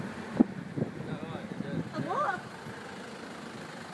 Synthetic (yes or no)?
no